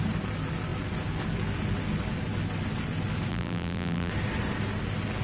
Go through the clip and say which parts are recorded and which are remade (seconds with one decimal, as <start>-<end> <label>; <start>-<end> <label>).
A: 0.0-3.3 recorded; 3.3-4.1 remade; 4.1-5.2 recorded